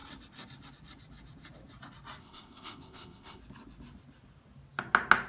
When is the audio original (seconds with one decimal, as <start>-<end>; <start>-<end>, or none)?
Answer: 0.0-2.2; 3.4-5.3